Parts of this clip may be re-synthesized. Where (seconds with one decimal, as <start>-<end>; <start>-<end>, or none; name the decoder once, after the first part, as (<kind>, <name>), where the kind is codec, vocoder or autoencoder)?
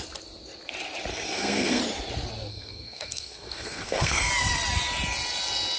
1.1-1.8 (codec, SNAC); 2.5-4.3